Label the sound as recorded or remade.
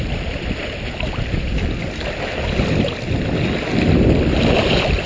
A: recorded